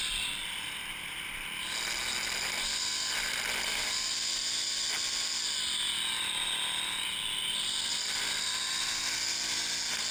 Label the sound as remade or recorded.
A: recorded